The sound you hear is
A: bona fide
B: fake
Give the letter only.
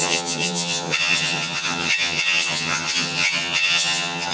B